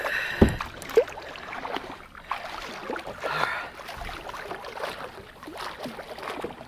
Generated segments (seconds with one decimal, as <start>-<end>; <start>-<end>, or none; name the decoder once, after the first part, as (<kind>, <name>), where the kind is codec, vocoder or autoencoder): none